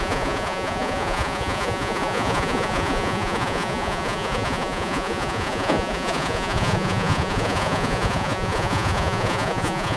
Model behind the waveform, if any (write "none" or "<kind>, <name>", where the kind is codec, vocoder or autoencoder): vocoder, Vocos